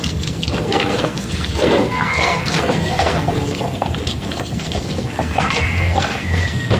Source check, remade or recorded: remade